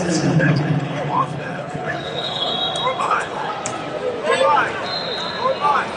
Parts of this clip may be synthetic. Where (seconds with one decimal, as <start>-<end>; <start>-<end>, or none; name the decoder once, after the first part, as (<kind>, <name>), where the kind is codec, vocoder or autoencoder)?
0.0-2.5 (codec, HILCodec); 3.0-3.5